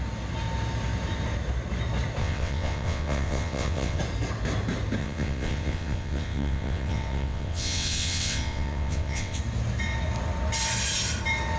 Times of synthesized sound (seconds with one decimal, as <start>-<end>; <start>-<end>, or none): 2.2-4.0; 5.0-9.4